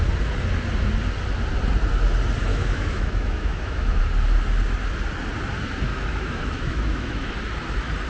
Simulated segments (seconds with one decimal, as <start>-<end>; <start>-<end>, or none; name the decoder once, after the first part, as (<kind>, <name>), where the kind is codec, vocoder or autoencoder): 2.5-4.0 (autoencoder, DAC-VAE); 5.9-7.3